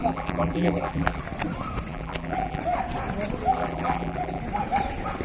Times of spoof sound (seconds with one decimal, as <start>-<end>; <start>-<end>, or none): 0.0-1.2; 1.9-2.6; 3.5-4.4